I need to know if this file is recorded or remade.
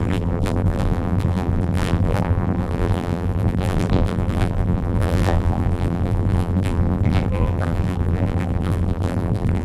remade